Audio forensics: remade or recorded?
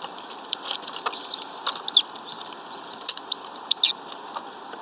recorded